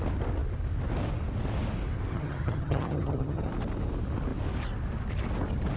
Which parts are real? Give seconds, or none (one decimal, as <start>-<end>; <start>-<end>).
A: 0.0-2.1; 3.5-5.8